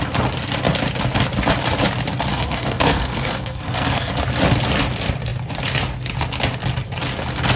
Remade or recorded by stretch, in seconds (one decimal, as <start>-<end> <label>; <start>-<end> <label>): 0.0-2.3 recorded; 2.3-4.1 remade; 4.1-7.6 recorded